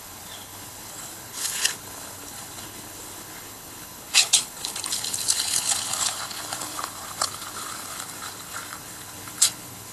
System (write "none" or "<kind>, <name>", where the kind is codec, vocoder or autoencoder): codec, HILCodec